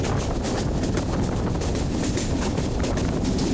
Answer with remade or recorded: recorded